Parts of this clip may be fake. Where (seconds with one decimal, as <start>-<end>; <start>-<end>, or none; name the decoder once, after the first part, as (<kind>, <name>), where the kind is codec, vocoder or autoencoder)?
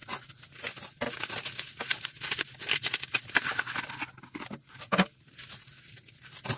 none